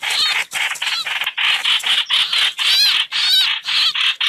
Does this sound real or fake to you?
real